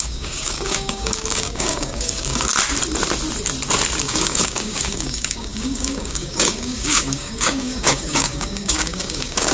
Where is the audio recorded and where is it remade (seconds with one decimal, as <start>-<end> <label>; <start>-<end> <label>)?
0.0-2.5 remade; 2.5-4.0 recorded; 4.0-9.5 remade